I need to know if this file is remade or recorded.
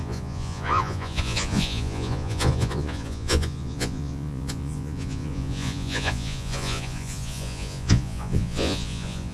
remade